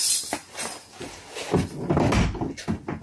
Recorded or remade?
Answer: recorded